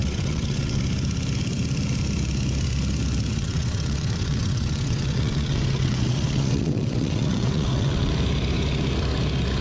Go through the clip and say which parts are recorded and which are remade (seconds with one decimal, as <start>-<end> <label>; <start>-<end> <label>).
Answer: 0.0-0.8 remade; 0.8-3.3 recorded; 3.3-8.1 remade; 8.1-9.6 recorded